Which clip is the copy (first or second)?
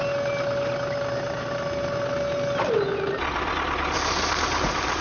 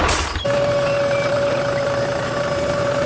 second